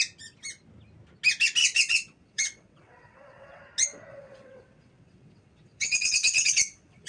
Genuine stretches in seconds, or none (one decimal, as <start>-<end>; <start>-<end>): 0.0-1.6; 3.6-4.1